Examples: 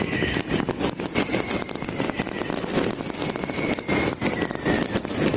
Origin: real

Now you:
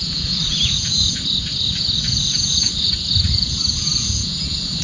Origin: fake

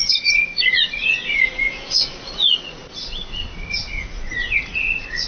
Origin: fake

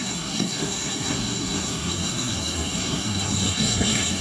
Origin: fake